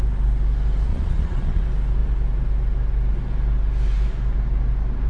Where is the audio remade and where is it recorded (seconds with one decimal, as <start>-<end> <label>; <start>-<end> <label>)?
0.0-0.9 recorded; 0.9-1.6 remade; 1.6-5.1 recorded

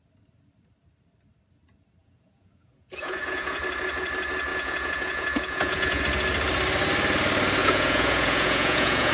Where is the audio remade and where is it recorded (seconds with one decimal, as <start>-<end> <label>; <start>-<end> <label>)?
0.0-2.0 recorded; 2.0-3.6 remade; 3.6-4.5 recorded; 4.5-6.0 remade; 6.0-7.6 recorded; 7.6-9.1 remade

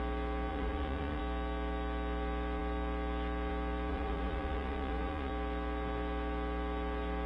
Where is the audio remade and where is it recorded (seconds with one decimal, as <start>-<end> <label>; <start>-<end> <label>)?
0.0-0.5 recorded; 0.5-1.2 remade; 1.2-3.9 recorded; 3.9-5.3 remade; 5.3-7.3 recorded

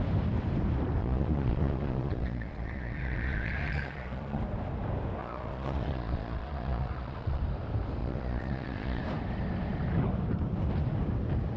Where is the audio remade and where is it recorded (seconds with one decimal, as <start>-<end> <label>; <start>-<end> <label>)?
0.0-1.0 recorded; 1.0-4.4 remade; 4.4-5.2 recorded; 5.2-7.4 remade; 7.4-8.0 recorded; 8.0-9.0 remade; 9.0-11.6 recorded

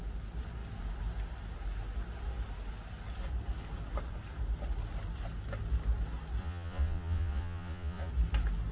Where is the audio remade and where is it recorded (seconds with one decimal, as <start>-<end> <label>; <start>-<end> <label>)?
0.0-6.4 recorded; 6.4-8.1 remade; 8.1-8.7 recorded

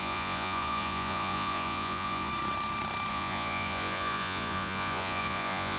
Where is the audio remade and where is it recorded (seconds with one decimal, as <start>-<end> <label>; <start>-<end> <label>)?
0.0-2.3 remade; 2.3-3.1 recorded; 3.1-5.8 remade

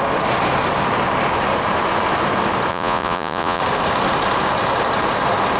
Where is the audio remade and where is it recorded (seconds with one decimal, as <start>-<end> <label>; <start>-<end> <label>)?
0.0-2.7 recorded; 2.7-3.6 remade; 3.6-5.6 recorded